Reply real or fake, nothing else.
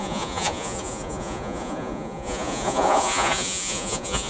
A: fake